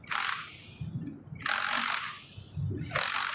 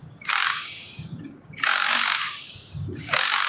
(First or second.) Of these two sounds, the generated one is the second